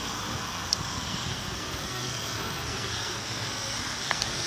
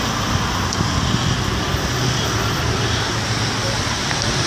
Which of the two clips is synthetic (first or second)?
first